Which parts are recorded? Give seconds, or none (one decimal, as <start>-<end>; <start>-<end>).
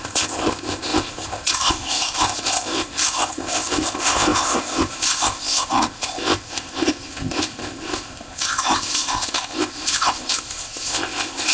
none